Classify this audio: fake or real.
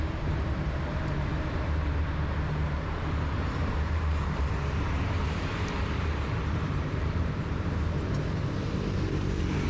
fake